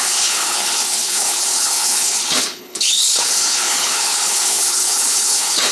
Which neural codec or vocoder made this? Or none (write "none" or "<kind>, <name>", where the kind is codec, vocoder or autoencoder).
codec, HILCodec